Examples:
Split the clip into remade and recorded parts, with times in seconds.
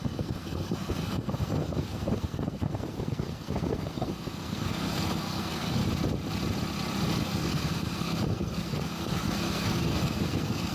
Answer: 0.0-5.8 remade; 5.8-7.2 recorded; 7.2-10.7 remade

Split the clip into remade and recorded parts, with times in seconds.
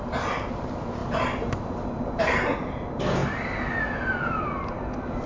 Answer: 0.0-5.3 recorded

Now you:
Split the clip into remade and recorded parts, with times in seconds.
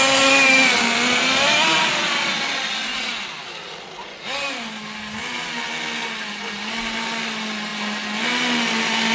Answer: 0.0-9.1 recorded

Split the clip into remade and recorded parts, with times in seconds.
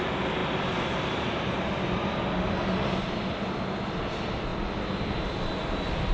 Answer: 0.0-6.1 recorded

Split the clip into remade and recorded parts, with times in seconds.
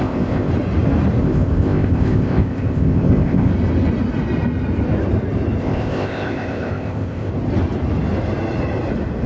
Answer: 0.0-0.5 remade; 0.5-1.2 recorded; 1.2-3.5 remade; 3.5-5.6 recorded; 5.6-7.3 remade; 7.3-9.3 recorded